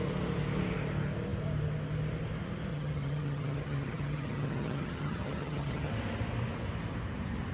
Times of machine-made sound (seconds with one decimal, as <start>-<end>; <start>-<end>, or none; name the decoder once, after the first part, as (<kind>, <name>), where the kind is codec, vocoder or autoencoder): 2.7-5.9 (vocoder, HiFi-GAN)